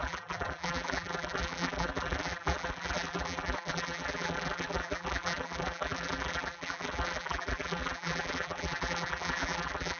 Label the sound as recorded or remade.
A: remade